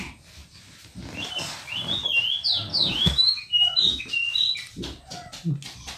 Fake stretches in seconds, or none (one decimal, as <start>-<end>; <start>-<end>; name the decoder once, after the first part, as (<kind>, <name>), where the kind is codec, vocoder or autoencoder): 2.7-4.0 (autoencoder, DAC-VAE)